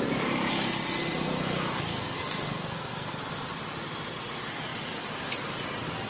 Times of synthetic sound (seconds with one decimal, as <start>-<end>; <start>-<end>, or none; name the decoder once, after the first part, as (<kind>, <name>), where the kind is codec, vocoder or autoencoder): 1.9-3.2 (codec, SNAC)